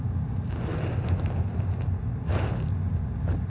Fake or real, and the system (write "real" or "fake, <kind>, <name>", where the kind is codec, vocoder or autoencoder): real